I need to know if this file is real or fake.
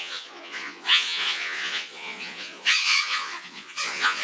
fake